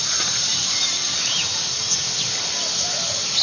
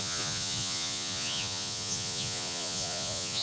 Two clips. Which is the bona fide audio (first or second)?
first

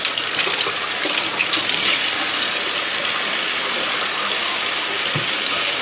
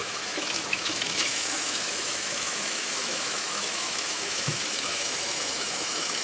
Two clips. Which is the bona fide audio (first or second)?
first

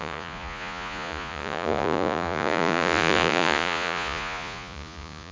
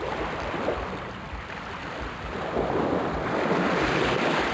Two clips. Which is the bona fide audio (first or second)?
second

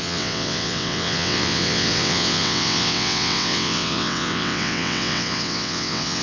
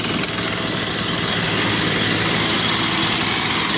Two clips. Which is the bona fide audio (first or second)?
second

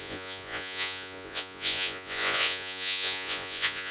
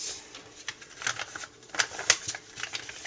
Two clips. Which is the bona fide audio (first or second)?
second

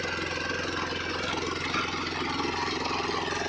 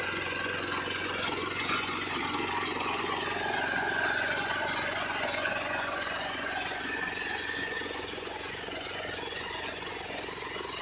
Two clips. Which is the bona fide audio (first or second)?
first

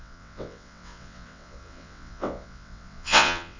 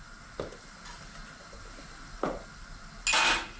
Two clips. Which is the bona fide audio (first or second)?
second